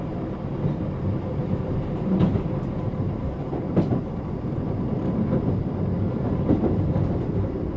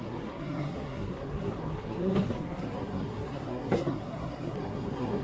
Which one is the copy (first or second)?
second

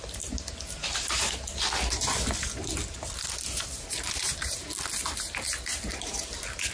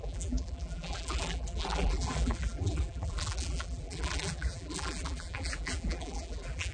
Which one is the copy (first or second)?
second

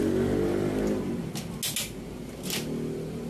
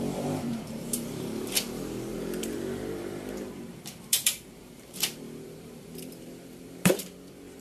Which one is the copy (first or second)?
second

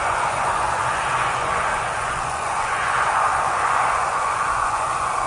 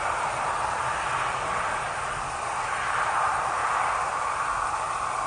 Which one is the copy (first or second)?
first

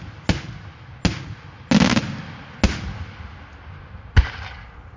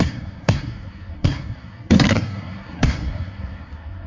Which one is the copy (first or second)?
second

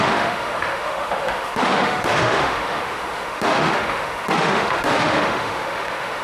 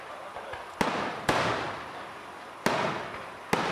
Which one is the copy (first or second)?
first